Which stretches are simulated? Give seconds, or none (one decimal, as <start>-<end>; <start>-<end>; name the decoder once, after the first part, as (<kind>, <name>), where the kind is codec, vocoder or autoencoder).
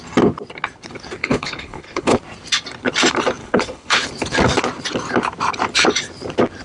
1.2-2.2 (codec, HILCodec); 3.4-4.1